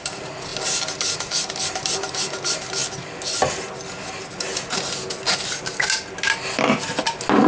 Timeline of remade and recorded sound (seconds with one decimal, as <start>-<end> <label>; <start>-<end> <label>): 0.0-7.5 recorded